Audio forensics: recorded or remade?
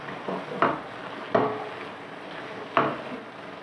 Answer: recorded